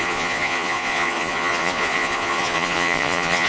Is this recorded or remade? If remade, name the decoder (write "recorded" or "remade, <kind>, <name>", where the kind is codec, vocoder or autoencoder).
remade, vocoder, Vocos